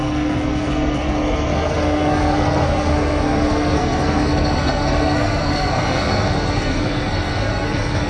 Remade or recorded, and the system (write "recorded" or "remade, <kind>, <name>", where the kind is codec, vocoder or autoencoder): remade, codec, SNAC